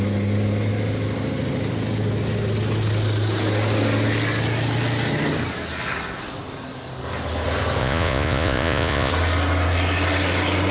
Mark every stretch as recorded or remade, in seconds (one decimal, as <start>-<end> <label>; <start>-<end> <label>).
0.0-7.8 recorded; 7.8-9.1 remade; 9.1-10.7 recorded